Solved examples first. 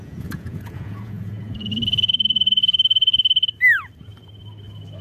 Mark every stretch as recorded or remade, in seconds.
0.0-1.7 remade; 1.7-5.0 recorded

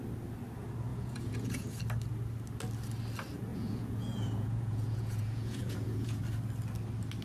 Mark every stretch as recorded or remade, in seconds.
0.0-0.9 recorded; 0.9-1.8 remade; 1.8-3.5 recorded; 3.5-6.2 remade; 6.2-7.2 recorded

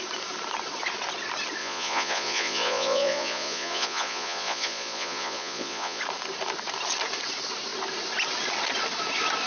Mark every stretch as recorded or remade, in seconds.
0.0-1.6 recorded; 1.6-6.0 remade; 6.0-9.5 recorded

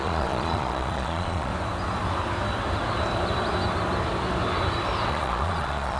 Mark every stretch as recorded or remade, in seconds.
0.0-1.5 remade; 1.5-5.1 recorded; 5.1-6.0 remade